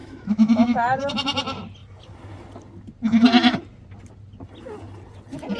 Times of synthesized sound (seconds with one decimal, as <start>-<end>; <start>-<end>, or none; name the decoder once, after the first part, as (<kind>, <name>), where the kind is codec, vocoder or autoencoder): 0.0-1.1 (autoencoder, DAC-VAE)